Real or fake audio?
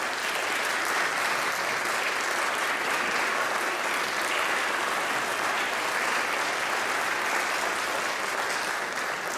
real